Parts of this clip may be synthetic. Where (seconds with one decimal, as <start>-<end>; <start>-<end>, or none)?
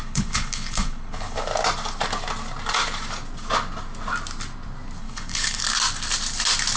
0.0-1.5; 5.0-5.6